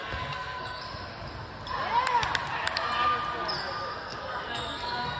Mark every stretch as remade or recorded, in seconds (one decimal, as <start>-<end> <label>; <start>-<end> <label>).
0.0-0.8 remade; 0.8-3.9 recorded; 3.9-5.2 remade

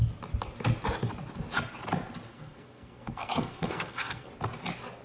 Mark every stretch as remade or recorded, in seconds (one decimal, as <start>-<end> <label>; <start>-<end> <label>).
0.0-2.3 recorded; 2.3-4.3 remade; 4.3-5.0 recorded

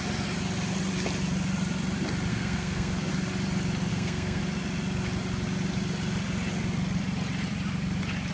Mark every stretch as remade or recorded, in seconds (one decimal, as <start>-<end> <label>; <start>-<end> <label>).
0.0-2.3 recorded; 2.3-3.1 remade; 3.1-3.9 recorded; 3.9-4.4 remade; 4.4-8.3 recorded

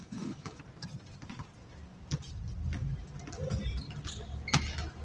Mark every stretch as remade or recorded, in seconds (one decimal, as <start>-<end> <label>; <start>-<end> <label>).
0.0-0.6 remade; 0.6-5.0 recorded